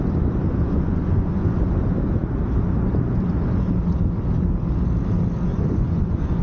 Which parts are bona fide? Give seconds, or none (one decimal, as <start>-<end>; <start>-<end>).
0.0-0.4; 1.6-5.5